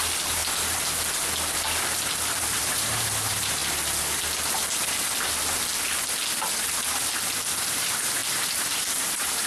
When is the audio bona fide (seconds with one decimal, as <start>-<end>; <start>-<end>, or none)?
0.4-2.4; 3.6-7.7